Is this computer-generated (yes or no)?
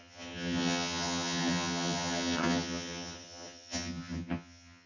yes